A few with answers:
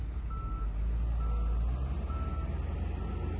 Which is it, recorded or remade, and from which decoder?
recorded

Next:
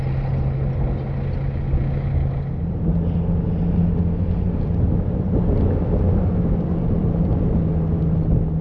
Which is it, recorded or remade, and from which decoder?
recorded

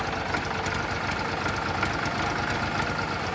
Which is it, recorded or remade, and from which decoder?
recorded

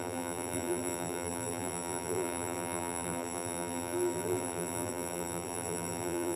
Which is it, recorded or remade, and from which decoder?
remade, vocoder, BigVGAN v2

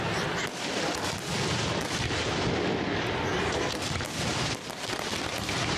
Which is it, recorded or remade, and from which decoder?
recorded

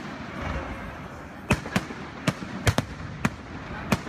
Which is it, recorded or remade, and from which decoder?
recorded